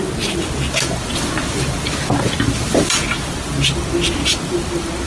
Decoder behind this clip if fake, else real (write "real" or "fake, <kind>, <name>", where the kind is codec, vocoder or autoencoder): real